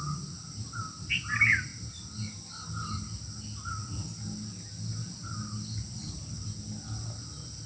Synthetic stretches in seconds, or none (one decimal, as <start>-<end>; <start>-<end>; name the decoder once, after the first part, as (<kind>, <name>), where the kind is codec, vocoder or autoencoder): none